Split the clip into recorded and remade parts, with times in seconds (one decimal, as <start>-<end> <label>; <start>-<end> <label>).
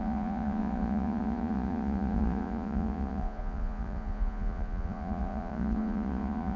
0.0-6.6 remade